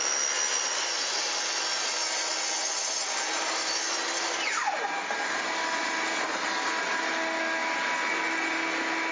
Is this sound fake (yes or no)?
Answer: no